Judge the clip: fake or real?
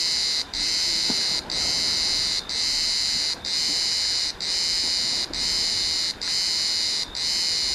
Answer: fake